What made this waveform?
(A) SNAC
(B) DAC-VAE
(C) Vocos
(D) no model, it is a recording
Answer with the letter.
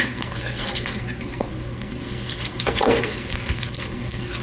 A